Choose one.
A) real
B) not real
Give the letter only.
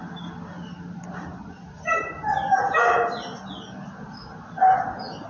A